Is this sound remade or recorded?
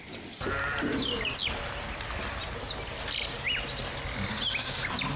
recorded